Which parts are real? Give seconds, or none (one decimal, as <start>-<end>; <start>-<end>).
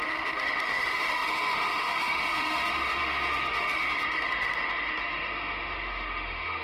none